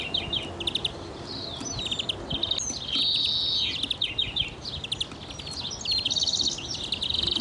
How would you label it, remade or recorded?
recorded